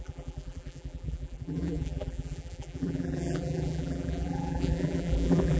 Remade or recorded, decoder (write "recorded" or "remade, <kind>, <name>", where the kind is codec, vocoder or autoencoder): remade, vocoder, BigVGAN v2